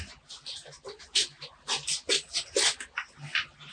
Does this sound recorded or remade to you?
recorded